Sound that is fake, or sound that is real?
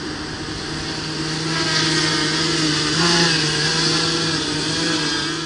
real